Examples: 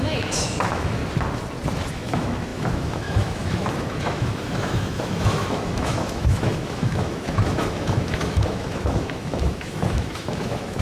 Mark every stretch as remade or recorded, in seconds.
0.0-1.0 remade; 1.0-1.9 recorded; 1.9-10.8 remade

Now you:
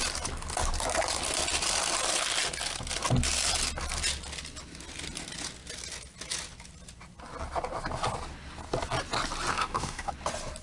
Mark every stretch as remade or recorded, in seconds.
0.0-9.5 recorded; 9.5-10.1 remade; 10.1-10.6 recorded

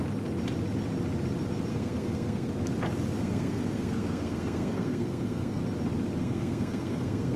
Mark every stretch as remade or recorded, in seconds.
0.0-1.7 recorded; 1.7-2.5 remade; 2.5-3.2 recorded; 3.2-5.6 remade; 5.6-6.2 recorded; 6.2-7.4 remade

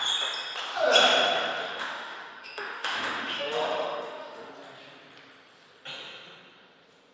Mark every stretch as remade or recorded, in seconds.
0.0-1.6 recorded; 1.6-4.5 remade; 4.5-7.1 recorded

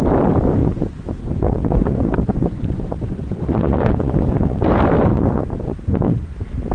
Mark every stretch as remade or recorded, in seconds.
0.0-0.6 recorded; 0.6-4.6 remade; 4.6-5.1 recorded; 5.1-6.3 remade; 6.3-6.7 recorded